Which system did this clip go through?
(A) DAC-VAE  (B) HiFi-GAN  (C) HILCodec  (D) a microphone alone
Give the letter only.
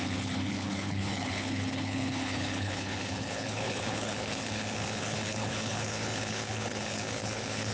C